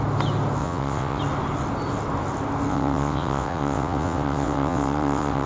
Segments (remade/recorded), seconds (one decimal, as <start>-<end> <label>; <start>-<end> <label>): 0.0-0.6 recorded; 0.6-1.2 remade; 1.2-2.7 recorded; 2.7-5.5 remade